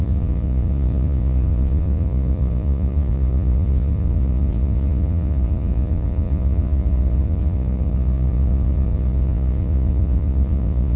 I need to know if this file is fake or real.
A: fake